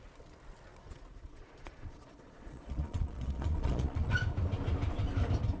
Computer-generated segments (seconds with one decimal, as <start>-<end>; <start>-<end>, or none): 0.7-4.1